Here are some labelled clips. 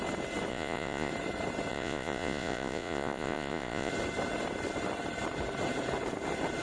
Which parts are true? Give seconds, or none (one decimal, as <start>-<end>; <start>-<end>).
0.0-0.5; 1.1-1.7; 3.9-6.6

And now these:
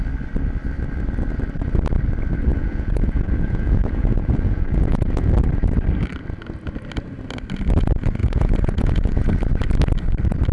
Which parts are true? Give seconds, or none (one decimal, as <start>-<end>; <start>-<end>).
0.0-2.5; 5.3-8.2; 9.3-10.5

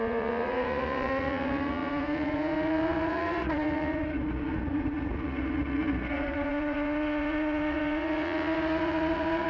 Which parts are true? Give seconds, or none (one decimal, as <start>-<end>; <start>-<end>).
none

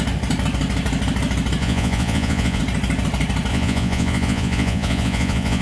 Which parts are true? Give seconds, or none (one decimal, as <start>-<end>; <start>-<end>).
0.0-1.6; 2.6-3.5